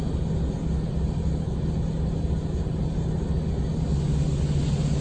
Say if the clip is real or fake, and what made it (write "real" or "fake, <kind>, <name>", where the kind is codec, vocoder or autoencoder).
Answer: real